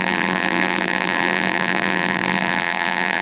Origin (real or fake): fake